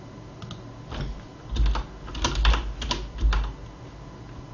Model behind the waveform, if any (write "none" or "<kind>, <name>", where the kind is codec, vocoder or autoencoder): none